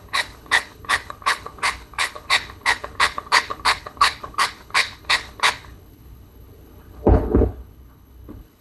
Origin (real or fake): fake